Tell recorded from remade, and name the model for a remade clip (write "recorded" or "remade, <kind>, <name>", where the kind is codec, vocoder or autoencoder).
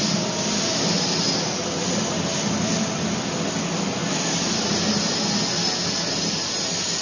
recorded